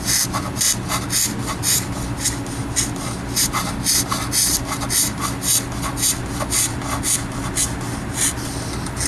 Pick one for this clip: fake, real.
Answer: real